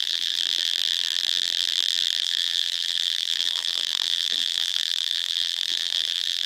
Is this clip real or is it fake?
fake